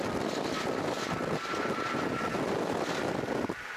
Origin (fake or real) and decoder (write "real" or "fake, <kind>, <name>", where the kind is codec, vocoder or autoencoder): real